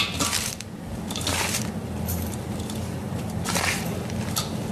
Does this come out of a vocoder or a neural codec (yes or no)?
yes